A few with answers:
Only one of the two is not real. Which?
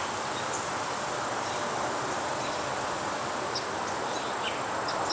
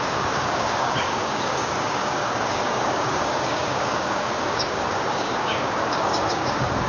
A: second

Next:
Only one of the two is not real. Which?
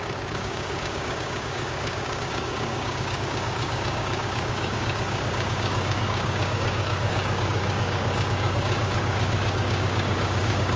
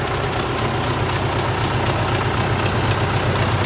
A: first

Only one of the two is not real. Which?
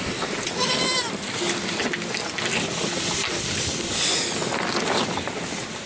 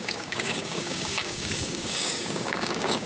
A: second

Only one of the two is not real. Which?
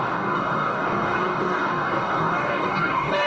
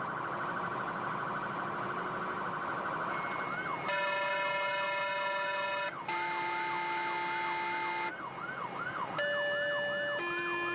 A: first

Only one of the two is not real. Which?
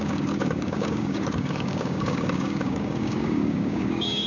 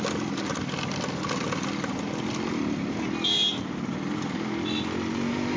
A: first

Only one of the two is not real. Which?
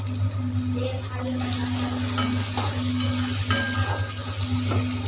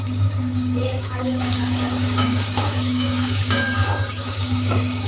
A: second